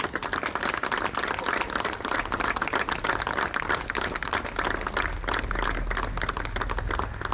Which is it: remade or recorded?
recorded